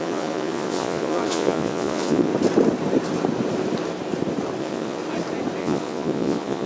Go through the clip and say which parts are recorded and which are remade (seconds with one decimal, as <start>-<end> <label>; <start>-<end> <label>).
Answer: 0.0-2.3 remade; 2.3-4.6 recorded; 4.6-5.0 remade; 5.0-5.6 recorded; 5.6-6.7 remade